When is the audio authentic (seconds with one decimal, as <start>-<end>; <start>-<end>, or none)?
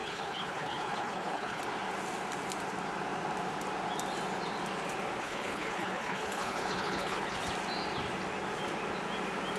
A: 1.6-5.2; 7.4-9.6